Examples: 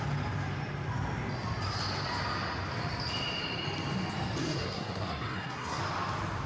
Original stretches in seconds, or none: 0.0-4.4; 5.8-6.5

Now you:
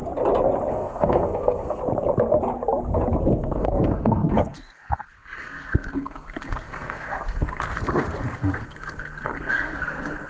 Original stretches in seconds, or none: 0.0-0.7; 1.8-3.3

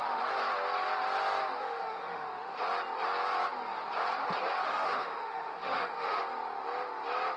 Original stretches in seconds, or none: 0.0-1.6; 2.6-4.6; 6.2-7.4

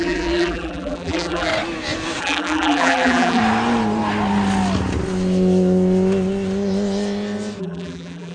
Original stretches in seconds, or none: 1.5-2.2; 3.4-7.6

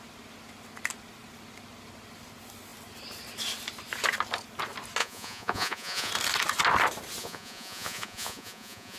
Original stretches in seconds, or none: 0.0-5.0; 6.1-7.2

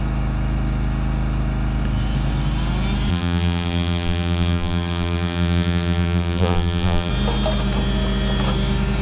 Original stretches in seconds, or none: 0.0-3.1; 7.1-9.0

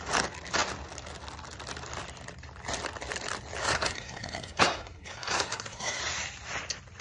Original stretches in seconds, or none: 0.0-3.6; 6.0-7.0